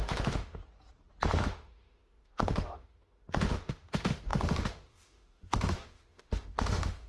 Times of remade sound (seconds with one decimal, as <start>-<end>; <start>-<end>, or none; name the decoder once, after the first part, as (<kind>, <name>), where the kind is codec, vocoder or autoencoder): 0.0-0.6 (autoencoder, DAC-VAE); 1.4-7.1